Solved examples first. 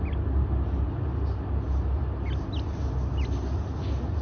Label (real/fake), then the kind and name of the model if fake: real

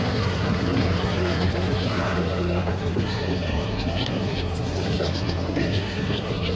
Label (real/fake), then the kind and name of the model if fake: fake, codec, SNAC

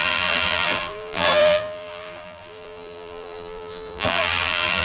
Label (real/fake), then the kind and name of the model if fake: fake, vocoder, BigVGAN v2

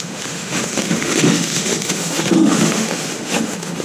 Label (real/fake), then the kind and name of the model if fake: fake, autoencoder, DAC-VAE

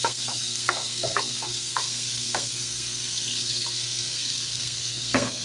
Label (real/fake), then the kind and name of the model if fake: fake, codec, SNAC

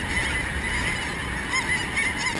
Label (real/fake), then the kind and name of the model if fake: real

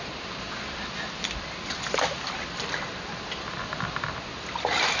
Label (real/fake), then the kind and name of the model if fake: real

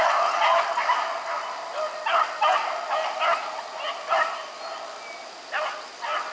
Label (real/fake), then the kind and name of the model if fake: real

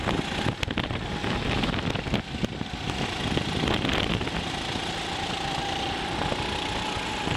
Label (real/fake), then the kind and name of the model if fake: real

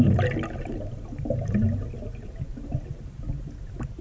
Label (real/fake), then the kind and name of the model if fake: real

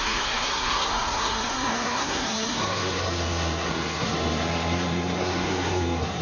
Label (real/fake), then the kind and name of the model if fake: fake, codec, SNAC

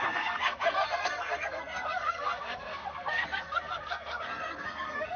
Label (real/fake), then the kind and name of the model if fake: fake, codec, SNAC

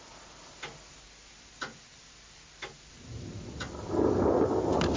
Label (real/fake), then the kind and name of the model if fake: real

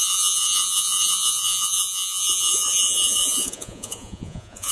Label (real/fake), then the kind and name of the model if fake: fake, vocoder, Vocos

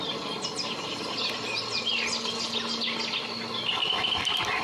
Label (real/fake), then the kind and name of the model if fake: real